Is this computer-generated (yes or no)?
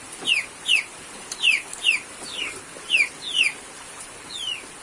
no